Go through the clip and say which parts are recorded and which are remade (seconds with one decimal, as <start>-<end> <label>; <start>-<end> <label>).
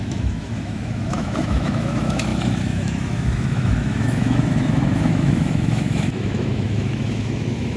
0.0-7.8 remade